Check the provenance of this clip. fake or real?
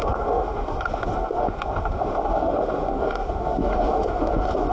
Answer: fake